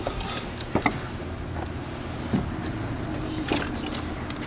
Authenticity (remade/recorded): recorded